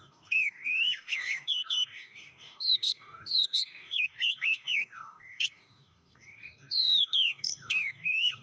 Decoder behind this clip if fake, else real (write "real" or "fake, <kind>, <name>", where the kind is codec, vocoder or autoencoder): fake, codec, DAC